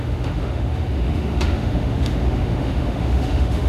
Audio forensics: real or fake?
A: fake